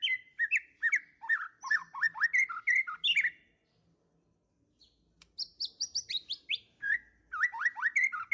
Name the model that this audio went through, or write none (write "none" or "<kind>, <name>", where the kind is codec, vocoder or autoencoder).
none